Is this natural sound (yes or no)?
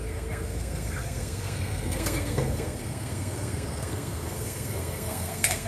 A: no